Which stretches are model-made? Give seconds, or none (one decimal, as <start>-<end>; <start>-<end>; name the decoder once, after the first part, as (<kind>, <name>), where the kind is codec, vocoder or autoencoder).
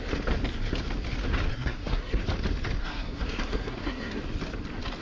1.5-2.2 (codec, SNAC); 2.8-4.2